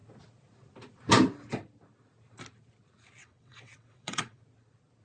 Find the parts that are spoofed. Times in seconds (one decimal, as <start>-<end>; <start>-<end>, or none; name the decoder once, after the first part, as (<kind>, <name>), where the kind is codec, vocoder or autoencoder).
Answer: 3.2-4.4 (vocoder, WaveNeXt)